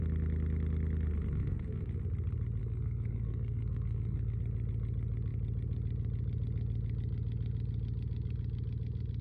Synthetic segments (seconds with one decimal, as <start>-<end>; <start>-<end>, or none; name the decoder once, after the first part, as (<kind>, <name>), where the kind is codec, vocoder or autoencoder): 1.4-2.0 (codec, SNAC); 2.6-4.4